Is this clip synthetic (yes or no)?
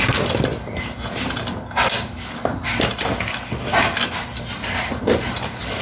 no